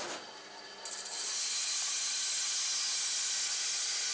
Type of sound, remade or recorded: recorded